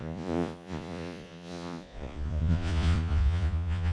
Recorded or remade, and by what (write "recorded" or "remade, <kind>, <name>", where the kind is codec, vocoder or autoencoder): remade, vocoder, Vocos